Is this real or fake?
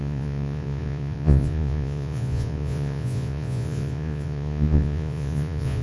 fake